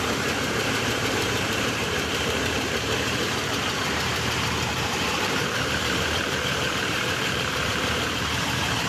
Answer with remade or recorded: remade